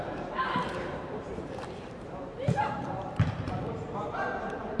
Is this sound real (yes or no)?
no